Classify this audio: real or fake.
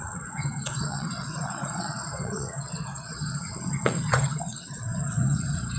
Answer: fake